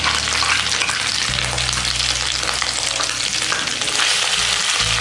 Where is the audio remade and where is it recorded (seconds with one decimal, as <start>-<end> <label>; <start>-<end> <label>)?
0.0-5.0 recorded